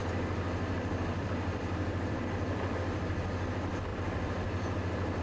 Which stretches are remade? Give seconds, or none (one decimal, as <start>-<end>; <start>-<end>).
0.0-3.1; 3.9-5.2